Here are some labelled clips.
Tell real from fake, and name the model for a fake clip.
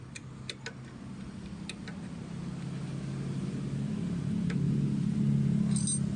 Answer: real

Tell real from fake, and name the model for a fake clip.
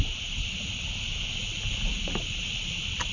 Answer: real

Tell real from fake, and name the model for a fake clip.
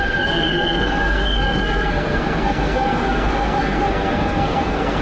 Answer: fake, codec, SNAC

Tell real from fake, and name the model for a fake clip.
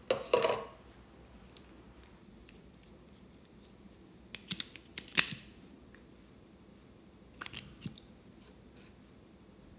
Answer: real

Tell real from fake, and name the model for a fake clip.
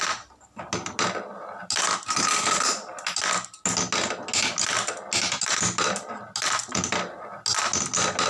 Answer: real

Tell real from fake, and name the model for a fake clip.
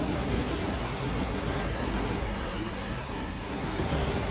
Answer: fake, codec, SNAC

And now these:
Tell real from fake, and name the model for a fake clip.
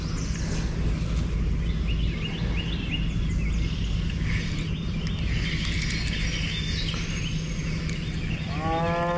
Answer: real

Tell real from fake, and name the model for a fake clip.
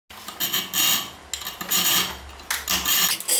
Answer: real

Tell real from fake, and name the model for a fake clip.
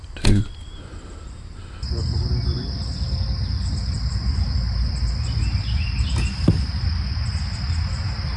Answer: real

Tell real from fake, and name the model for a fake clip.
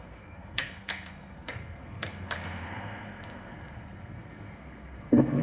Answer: fake, codec, SNAC